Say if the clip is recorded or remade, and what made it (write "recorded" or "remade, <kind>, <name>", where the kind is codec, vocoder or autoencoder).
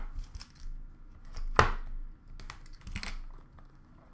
recorded